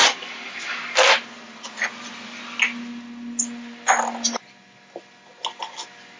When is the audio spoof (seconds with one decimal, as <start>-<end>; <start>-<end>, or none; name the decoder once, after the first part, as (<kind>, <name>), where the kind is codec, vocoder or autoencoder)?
0.0-0.8 (codec, DAC)